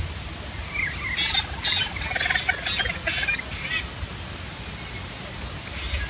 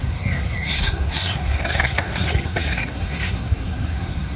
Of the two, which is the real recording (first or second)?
first